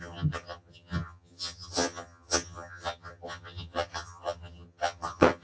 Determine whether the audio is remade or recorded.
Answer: remade